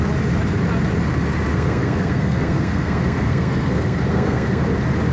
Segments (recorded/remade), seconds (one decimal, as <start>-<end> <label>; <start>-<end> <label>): 0.0-1.5 recorded; 1.5-4.6 remade; 4.6-5.1 recorded

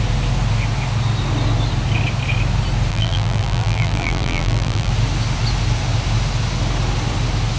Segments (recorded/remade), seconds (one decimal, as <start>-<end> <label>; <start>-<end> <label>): 0.0-2.9 recorded; 2.9-4.9 remade; 4.9-7.6 recorded